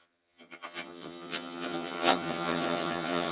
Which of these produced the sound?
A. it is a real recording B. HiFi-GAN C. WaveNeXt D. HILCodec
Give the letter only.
B